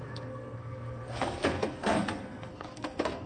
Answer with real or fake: fake